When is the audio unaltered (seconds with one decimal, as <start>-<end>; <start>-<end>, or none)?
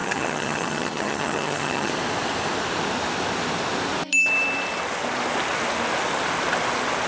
1.9-7.1